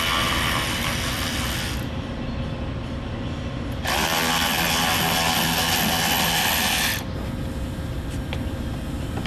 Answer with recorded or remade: recorded